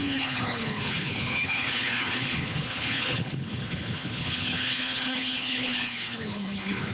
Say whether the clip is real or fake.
fake